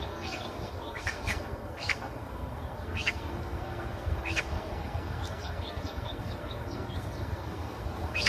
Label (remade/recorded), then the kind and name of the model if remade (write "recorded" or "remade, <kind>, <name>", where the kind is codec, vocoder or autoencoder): remade, codec, SNAC